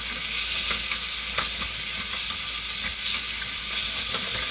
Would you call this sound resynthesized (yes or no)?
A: no